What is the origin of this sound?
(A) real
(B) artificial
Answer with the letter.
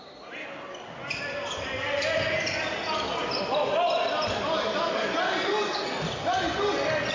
A